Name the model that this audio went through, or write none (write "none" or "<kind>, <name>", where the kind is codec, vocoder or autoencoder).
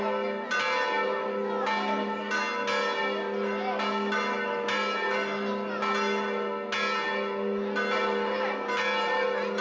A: none